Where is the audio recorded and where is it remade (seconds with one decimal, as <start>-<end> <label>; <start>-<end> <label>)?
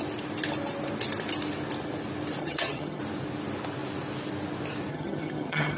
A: 0.0-2.4 recorded; 2.4-3.0 remade; 3.0-4.9 recorded; 4.9-5.8 remade